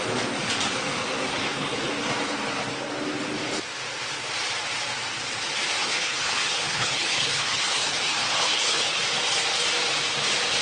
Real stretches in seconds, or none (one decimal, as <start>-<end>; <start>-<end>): 0.0-1.3; 1.9-5.8; 9.0-10.6